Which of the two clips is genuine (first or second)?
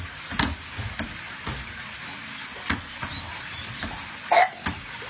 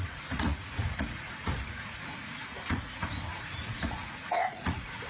first